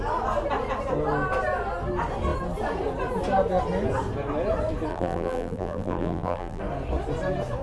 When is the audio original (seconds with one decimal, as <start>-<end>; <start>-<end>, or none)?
0.0-4.9; 6.6-7.6